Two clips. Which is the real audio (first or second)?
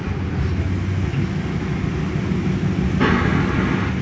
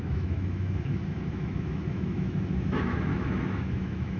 first